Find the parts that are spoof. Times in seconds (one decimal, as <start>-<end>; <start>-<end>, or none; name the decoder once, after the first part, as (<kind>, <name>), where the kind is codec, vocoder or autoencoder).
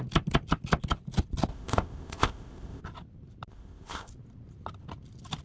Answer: 1.5-2.8 (codec, ZipCodec); 3.5-4.1